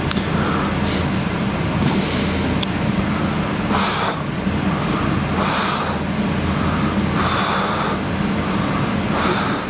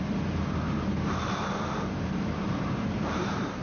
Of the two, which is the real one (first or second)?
first